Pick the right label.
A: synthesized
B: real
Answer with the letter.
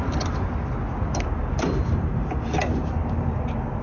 B